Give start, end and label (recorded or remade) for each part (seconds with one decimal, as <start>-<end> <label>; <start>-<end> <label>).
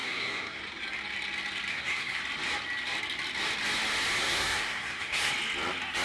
0.0-0.6 remade; 0.6-1.7 recorded; 1.7-2.2 remade; 2.2-4.2 recorded; 4.2-5.3 remade; 5.3-6.0 recorded